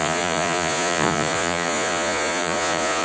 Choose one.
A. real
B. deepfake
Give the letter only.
B